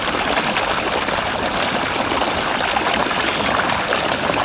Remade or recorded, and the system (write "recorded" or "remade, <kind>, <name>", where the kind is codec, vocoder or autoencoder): recorded